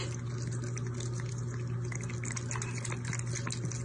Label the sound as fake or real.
real